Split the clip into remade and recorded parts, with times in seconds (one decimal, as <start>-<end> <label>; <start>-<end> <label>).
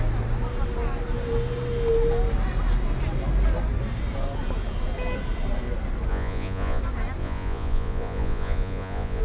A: 0.0-6.1 recorded; 6.1-6.8 remade; 6.8-7.2 recorded; 7.2-9.2 remade